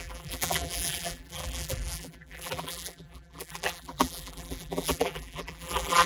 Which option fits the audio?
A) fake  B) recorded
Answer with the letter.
A